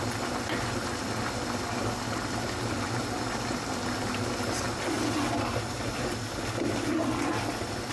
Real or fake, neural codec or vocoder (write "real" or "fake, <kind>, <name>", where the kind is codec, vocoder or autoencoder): real